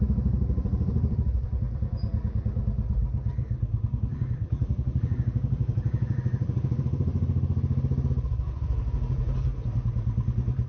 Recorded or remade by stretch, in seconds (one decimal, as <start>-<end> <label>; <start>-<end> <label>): 0.0-3.0 remade; 3.0-3.6 recorded; 3.6-7.1 remade; 7.1-8.1 recorded; 8.1-9.5 remade; 9.5-10.7 recorded